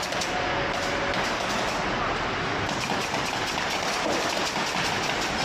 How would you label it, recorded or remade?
recorded